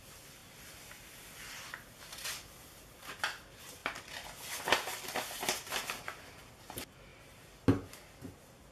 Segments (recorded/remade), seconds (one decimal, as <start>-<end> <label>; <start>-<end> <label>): 0.0-8.7 recorded